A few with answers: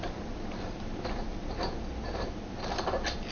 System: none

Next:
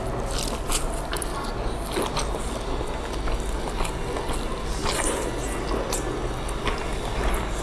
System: none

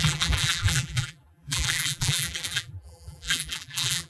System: vocoder, BigVGAN v2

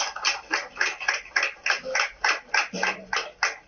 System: none